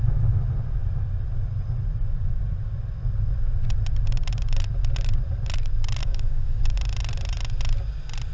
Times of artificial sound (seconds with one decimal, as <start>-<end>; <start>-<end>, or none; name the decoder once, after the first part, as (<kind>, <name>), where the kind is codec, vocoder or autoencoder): 6.0-6.6 (codec, DAC)